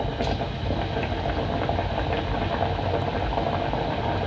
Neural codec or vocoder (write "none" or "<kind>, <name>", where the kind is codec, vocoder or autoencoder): none